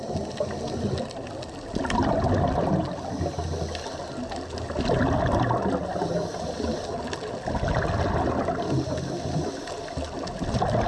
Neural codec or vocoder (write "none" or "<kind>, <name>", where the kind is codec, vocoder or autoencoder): none